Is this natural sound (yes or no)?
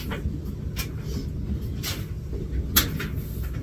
yes